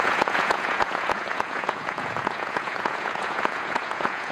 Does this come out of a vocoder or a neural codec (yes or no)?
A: yes